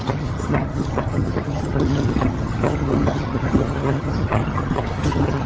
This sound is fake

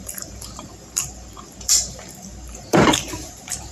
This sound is fake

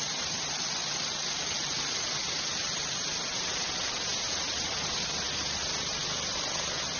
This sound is real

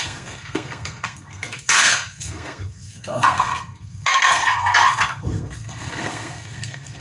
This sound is fake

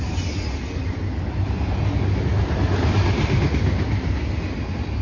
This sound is real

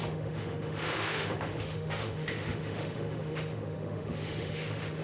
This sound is fake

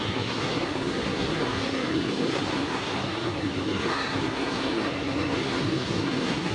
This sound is fake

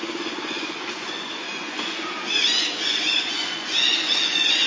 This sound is fake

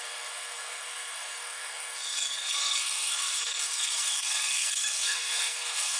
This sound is fake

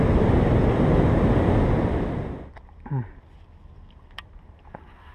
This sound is real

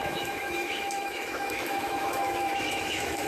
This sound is fake